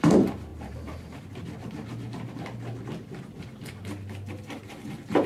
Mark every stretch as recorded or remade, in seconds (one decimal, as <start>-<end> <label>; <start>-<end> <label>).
0.0-0.5 recorded; 0.5-1.2 remade; 1.2-5.3 recorded